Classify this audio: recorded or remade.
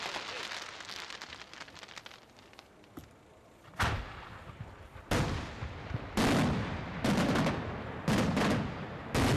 recorded